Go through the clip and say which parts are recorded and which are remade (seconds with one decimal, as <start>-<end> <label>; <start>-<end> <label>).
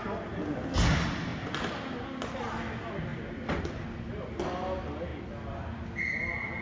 0.0-6.6 recorded